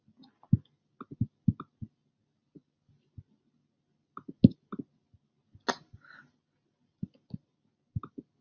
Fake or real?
real